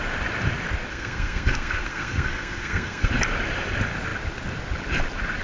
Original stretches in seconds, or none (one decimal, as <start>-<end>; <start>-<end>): 0.0-0.9; 3.1-5.4